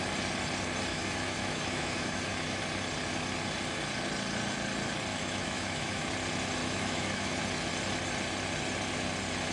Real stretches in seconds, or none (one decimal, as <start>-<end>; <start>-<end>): 0.0-0.9; 2.6-5.1; 6.1-6.6; 7.4-9.5